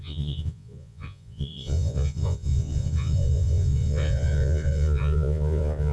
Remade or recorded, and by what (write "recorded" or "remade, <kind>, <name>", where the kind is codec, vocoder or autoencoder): remade, vocoder, Vocos